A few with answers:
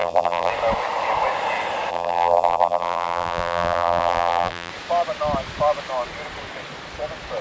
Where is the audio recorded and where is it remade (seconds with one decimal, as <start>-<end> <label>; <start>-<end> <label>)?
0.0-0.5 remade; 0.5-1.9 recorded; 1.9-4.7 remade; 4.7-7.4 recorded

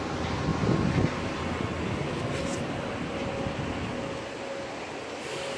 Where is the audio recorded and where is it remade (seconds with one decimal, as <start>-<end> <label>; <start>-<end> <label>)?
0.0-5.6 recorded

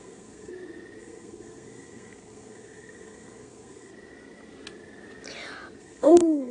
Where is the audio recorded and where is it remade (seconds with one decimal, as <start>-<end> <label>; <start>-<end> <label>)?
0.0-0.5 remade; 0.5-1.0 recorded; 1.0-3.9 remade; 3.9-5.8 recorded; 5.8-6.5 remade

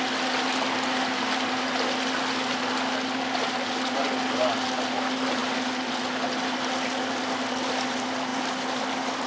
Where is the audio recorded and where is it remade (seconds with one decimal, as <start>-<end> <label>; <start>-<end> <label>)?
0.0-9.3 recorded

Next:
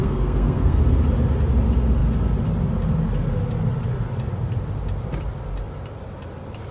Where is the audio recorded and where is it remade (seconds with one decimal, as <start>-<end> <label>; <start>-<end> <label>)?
0.0-0.8 remade; 0.8-6.7 recorded

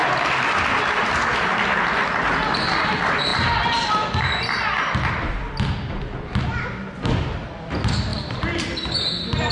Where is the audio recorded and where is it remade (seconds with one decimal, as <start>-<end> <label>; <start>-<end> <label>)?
0.0-9.5 recorded

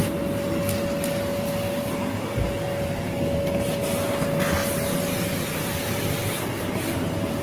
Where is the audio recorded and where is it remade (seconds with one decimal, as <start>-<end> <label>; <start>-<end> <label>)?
0.0-7.4 recorded